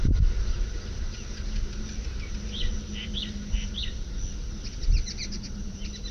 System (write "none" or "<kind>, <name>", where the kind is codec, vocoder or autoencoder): none